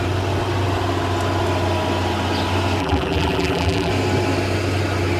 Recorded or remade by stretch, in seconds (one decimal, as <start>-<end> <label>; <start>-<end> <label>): 0.0-2.8 recorded; 2.8-3.9 remade; 3.9-5.2 recorded

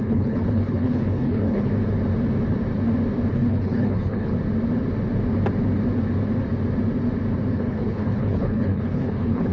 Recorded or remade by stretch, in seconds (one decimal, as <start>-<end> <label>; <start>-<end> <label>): 0.0-1.7 remade; 1.7-3.3 recorded; 3.3-4.3 remade; 4.3-7.5 recorded; 7.5-9.5 remade

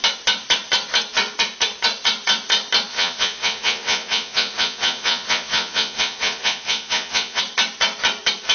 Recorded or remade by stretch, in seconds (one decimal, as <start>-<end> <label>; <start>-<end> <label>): 0.0-2.9 recorded; 2.9-7.4 remade; 7.4-8.5 recorded

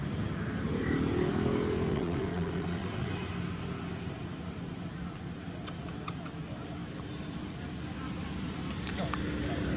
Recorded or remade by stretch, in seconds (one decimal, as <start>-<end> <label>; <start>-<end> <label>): 0.0-1.9 recorded; 1.9-3.1 remade; 3.1-9.8 recorded

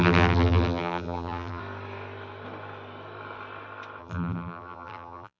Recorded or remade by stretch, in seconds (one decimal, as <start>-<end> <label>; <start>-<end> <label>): 0.0-1.6 remade; 1.6-4.0 recorded; 4.0-5.4 remade

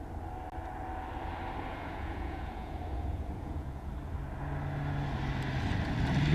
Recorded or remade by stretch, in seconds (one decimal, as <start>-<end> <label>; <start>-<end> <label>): 0.0-1.7 recorded; 1.7-3.9 remade; 3.9-6.3 recorded

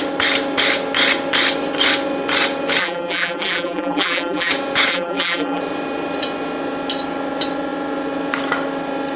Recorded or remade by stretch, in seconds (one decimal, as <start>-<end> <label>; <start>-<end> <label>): 0.0-2.8 recorded; 2.8-4.5 remade; 4.5-4.9 recorded; 4.9-5.6 remade; 5.6-9.2 recorded